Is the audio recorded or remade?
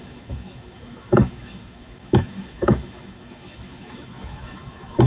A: remade